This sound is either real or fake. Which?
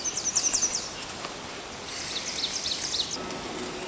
real